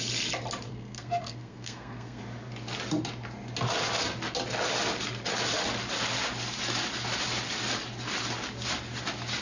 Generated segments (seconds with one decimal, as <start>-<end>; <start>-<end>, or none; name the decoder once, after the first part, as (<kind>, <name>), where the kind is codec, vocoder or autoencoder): 0.7-2.2 (codec, SNAC)